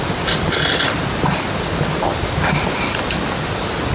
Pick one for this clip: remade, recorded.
recorded